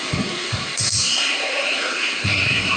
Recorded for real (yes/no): no